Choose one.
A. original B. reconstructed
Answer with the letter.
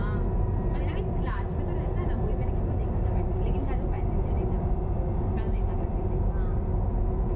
A